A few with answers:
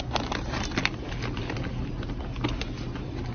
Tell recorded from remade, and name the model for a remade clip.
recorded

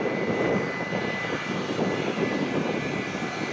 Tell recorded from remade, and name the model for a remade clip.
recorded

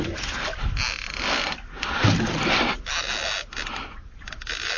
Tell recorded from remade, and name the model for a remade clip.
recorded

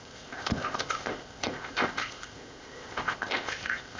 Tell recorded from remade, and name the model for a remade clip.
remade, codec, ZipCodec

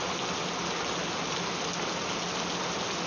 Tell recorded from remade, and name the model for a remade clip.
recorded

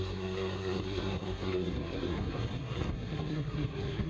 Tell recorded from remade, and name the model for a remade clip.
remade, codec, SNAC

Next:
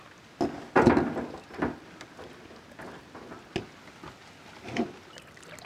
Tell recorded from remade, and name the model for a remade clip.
recorded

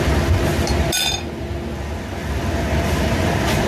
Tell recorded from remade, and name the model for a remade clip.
recorded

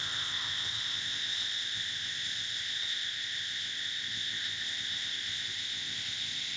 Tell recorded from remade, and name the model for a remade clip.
remade, codec, ZipCodec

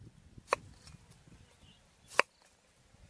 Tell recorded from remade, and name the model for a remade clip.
recorded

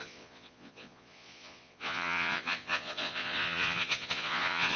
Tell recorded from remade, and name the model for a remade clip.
remade, vocoder, Vocos